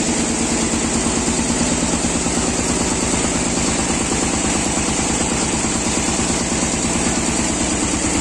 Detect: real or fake real